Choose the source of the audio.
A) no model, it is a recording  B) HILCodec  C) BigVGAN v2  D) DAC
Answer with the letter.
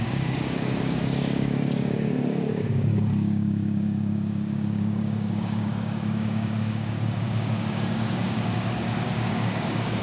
D